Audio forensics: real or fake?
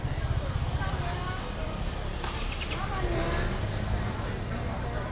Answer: real